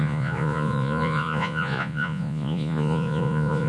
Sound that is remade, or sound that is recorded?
remade